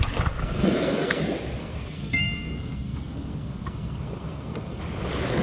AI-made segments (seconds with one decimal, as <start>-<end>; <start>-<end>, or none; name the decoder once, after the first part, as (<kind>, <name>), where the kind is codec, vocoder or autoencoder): 0.4-1.2 (codec, SNAC); 1.6-4.8